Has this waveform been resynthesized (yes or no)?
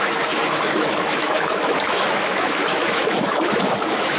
yes